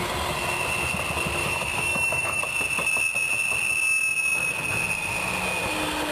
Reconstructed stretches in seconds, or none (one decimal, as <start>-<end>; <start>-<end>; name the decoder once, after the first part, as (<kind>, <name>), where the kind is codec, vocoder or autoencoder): 1.4-2.4 (autoencoder, DAC-VAE)